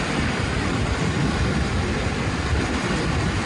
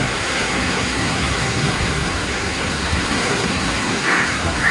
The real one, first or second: first